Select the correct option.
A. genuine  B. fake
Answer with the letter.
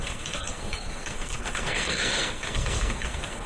B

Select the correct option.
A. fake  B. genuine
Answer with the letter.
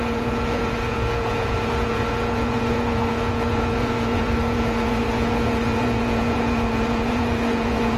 A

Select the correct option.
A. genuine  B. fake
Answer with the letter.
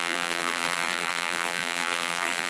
B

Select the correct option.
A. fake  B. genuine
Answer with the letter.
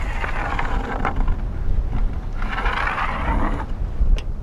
B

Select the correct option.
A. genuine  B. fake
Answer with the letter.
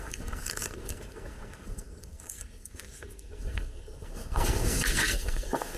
B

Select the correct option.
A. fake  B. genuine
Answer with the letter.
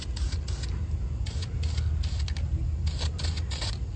B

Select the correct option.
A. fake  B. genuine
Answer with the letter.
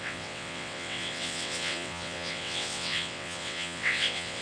A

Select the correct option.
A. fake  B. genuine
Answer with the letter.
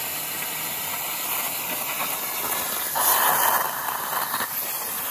B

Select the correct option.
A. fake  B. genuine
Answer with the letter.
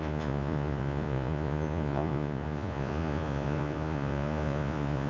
A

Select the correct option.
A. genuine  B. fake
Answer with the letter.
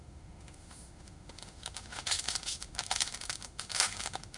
B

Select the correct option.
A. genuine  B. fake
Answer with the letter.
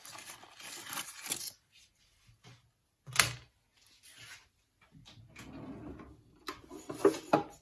A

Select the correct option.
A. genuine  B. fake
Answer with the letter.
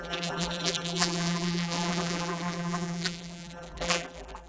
B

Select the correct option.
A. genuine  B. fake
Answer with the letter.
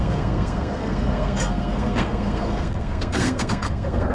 B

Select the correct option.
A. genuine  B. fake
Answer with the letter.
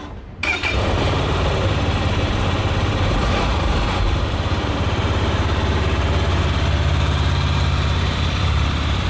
B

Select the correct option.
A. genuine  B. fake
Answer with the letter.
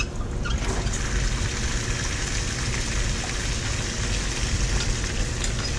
A